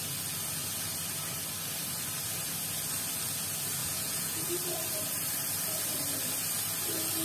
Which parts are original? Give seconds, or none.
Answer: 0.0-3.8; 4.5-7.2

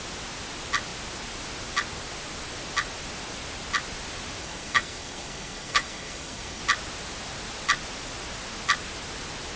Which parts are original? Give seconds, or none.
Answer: 0.0-4.4; 6.6-9.6

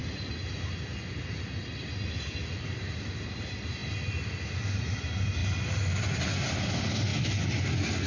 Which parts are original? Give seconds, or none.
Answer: 0.0-8.1

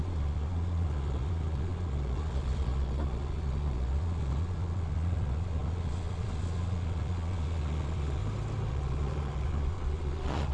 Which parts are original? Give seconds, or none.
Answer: 8.2-8.7

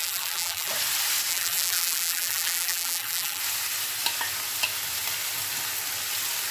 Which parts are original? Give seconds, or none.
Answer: 0.7-1.3; 3.4-6.5